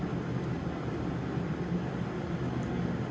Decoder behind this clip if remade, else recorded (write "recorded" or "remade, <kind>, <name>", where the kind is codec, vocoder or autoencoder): recorded